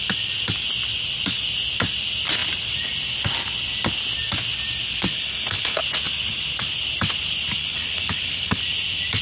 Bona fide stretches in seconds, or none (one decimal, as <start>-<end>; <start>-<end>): 0.0-5.1; 5.8-7.6; 8.6-9.2

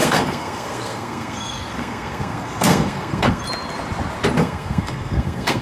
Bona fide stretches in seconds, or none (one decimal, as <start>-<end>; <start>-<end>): 3.4-4.4

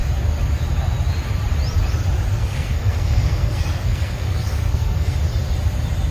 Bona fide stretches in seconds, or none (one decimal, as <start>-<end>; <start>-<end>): 0.0-2.3; 5.2-6.1